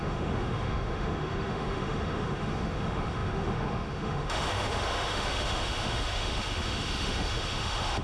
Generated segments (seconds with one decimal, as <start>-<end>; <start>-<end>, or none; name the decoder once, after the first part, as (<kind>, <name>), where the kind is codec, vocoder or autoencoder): 0.0-8.0 (autoencoder, DAC-VAE)